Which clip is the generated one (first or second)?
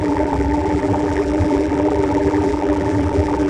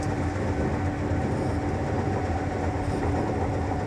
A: first